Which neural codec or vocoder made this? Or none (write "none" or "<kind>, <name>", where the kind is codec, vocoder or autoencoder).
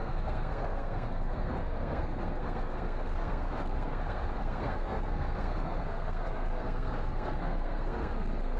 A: codec, SNAC